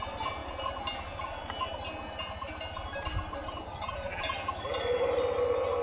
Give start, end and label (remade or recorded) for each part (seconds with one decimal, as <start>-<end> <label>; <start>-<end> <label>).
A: 0.0-5.8 recorded

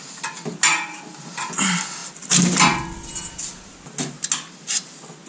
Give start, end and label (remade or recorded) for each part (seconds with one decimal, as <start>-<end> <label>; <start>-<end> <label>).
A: 0.0-5.3 recorded

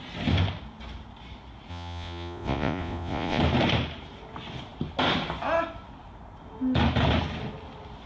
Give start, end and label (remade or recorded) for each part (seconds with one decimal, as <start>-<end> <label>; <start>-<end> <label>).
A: 0.0-1.7 recorded; 1.7-3.4 remade; 3.4-8.1 recorded

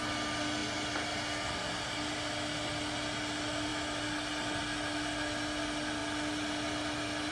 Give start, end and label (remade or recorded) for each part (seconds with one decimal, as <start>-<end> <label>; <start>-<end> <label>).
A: 0.0-7.3 recorded

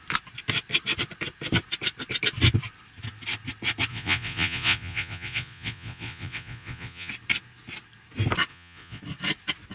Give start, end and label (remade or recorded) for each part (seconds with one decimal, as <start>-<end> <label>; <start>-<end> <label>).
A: 0.0-3.9 recorded; 3.9-7.1 remade; 7.1-8.5 recorded; 8.5-9.0 remade; 9.0-9.7 recorded

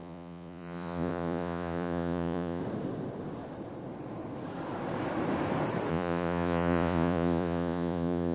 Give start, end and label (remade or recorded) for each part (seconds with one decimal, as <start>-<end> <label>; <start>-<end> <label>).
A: 0.0-2.6 remade; 2.6-5.9 recorded; 5.9-8.3 remade

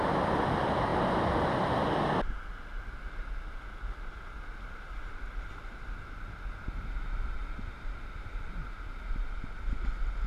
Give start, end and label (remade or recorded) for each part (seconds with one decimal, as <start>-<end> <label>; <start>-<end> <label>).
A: 0.0-10.3 recorded